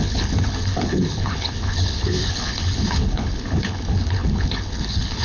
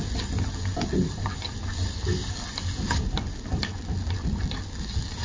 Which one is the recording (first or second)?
second